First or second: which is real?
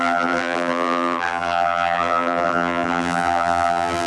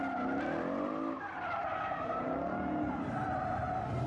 second